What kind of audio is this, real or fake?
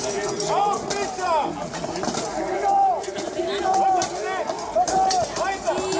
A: real